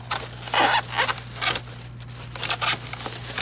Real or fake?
real